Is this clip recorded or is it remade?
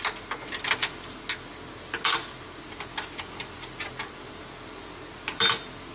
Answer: recorded